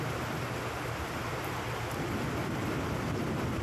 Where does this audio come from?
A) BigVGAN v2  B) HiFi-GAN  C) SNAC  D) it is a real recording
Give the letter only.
D